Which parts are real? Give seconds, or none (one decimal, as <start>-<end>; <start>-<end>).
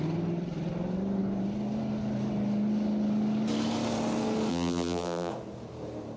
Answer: 0.0-4.5; 5.3-6.2